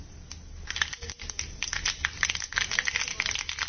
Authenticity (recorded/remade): recorded